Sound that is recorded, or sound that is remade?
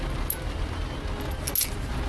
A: recorded